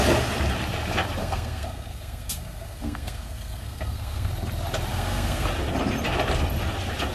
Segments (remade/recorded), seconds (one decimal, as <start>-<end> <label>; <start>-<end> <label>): 0.0-1.2 recorded; 1.2-4.3 remade; 4.3-4.9 recorded; 4.9-5.5 remade; 5.5-7.1 recorded